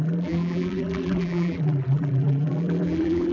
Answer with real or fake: fake